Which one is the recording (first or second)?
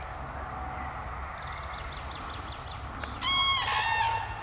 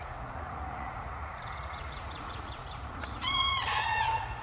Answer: first